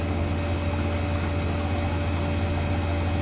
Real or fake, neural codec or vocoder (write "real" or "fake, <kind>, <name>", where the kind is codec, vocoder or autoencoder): real